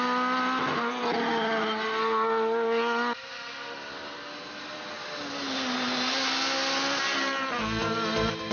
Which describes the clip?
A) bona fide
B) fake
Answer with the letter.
A